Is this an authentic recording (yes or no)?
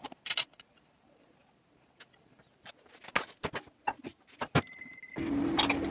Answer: yes